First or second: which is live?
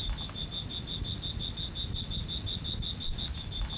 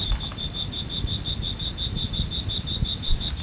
first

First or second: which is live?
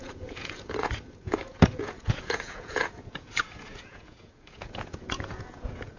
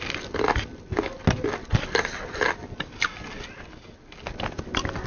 second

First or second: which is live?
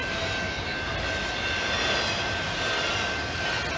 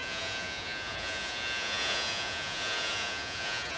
first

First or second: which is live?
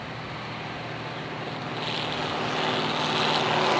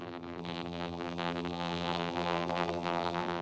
first